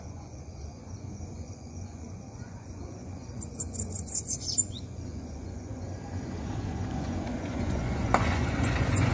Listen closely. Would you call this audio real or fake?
fake